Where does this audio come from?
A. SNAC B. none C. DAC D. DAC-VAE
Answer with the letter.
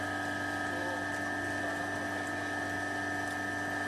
B